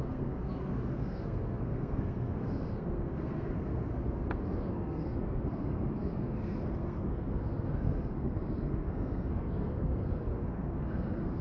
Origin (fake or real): fake